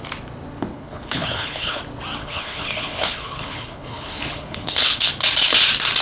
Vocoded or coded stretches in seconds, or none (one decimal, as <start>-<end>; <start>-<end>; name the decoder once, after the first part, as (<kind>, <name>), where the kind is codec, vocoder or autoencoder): 0.7-1.8 (codec, HILCodec); 2.2-5.1